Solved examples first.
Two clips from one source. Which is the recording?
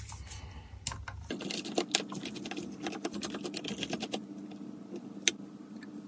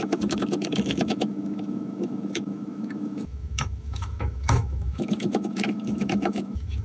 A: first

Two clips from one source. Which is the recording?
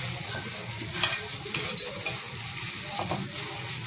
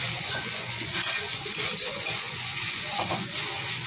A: first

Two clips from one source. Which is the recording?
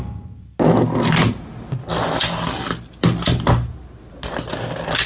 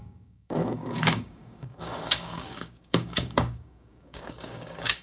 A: first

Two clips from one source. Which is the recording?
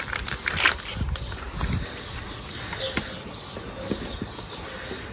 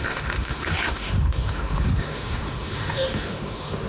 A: first